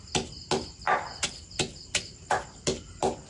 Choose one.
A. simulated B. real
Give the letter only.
B